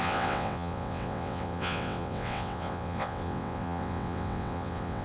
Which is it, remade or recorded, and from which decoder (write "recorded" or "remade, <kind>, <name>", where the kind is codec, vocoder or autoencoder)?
remade, vocoder, WaveNeXt